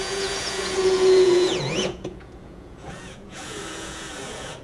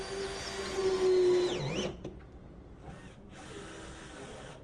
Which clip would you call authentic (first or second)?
second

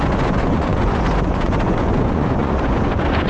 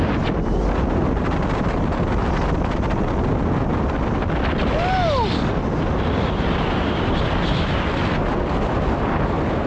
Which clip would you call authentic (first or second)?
second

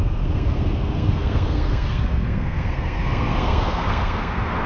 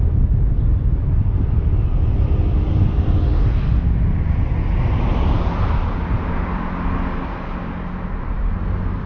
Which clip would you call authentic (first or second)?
second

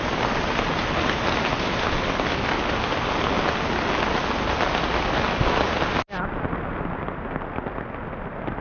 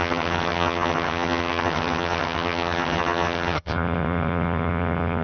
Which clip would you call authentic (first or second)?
first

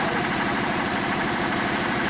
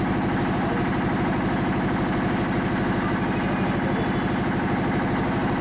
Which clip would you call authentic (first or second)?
second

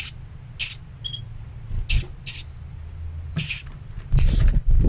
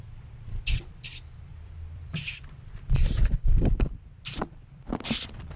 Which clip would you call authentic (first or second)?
first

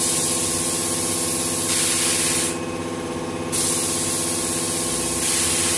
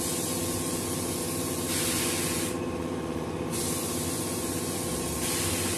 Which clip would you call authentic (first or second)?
first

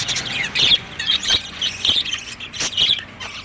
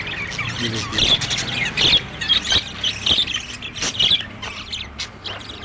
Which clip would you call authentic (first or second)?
second